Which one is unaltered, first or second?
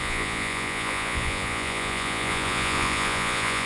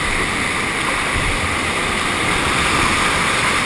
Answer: second